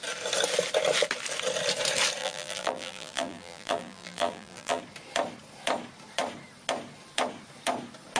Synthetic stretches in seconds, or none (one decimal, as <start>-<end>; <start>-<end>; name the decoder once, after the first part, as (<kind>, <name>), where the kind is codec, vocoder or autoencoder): 2.2-4.8 (vocoder, BigVGAN v2)